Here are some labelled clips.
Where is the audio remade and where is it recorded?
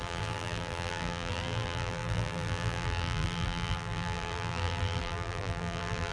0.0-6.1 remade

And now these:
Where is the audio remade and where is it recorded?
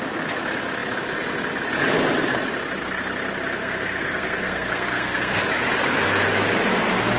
0.0-3.6 recorded; 3.6-5.4 remade; 5.4-7.2 recorded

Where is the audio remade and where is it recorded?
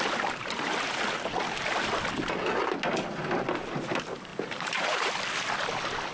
0.0-4.3 recorded; 4.3-5.1 remade; 5.1-6.1 recorded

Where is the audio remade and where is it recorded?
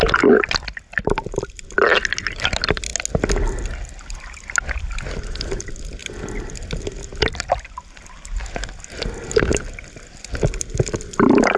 0.0-11.6 recorded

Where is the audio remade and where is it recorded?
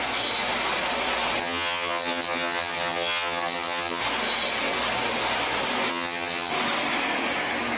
0.0-1.4 recorded; 1.4-4.0 remade; 4.0-5.9 recorded; 5.9-6.5 remade; 6.5-7.8 recorded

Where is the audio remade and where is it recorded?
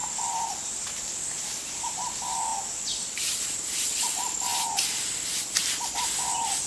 0.0-2.5 recorded; 2.5-3.4 remade; 3.4-4.5 recorded; 4.5-5.0 remade; 5.0-5.6 recorded; 5.6-6.7 remade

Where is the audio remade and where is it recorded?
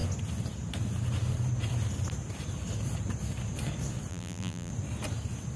0.0-4.1 recorded; 4.1-4.7 remade; 4.7-5.6 recorded